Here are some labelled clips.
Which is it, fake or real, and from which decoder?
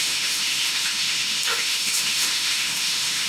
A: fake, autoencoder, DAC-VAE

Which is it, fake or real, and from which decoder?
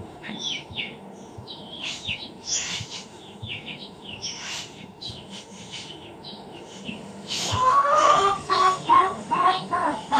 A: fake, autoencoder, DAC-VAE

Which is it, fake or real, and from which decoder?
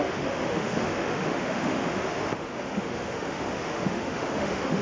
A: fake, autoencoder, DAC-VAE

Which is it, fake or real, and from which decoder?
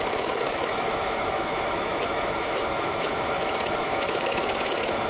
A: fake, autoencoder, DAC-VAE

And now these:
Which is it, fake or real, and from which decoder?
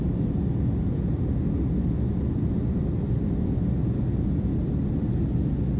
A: real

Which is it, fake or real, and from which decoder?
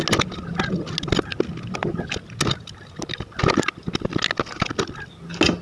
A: real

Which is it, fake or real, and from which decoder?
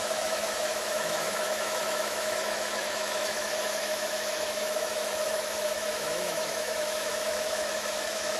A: fake, autoencoder, DAC-VAE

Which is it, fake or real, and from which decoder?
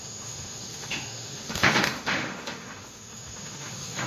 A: fake, autoencoder, DAC-VAE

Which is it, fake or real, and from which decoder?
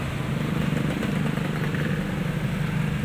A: real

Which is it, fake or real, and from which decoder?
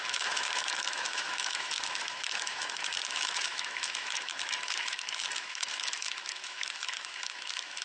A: fake, autoencoder, DAC-VAE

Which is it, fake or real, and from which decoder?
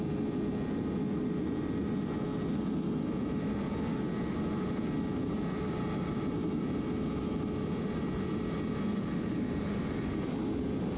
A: real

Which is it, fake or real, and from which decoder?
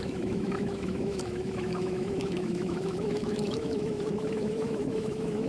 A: fake, autoencoder, DAC-VAE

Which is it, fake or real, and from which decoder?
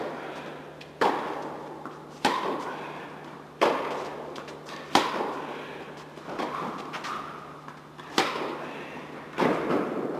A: real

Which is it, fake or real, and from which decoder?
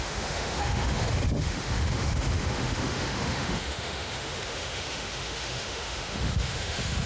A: fake, autoencoder, DAC-VAE